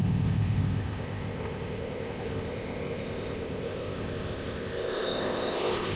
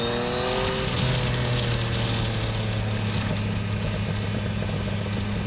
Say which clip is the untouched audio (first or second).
second